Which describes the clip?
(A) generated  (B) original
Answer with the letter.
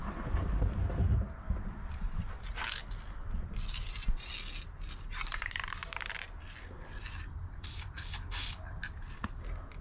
B